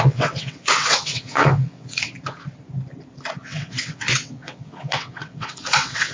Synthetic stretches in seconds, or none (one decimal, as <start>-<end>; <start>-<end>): 0.0-2.1; 3.4-6.1